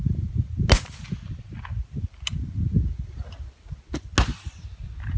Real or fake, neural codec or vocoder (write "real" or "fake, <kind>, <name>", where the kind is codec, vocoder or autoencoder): real